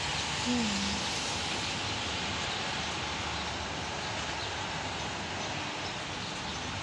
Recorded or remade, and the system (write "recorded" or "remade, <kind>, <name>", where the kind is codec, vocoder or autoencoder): recorded